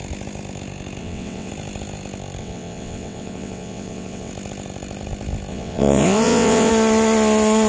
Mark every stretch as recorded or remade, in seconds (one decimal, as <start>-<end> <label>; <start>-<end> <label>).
0.0-1.0 recorded; 1.0-1.5 remade; 1.5-2.4 recorded; 2.4-4.3 remade; 4.3-5.5 recorded; 5.5-6.7 remade; 6.7-7.7 recorded